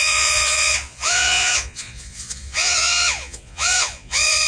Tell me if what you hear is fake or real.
fake